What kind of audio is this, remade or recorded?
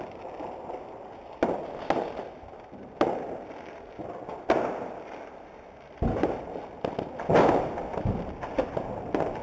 recorded